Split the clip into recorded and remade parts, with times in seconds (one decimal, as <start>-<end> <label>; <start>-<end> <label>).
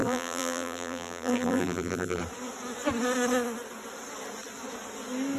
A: 0.0-2.2 remade; 2.2-5.4 recorded